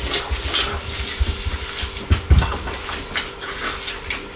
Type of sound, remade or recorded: recorded